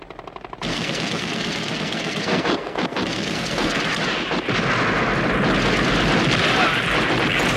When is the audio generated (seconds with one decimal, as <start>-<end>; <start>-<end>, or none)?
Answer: 0.7-3.8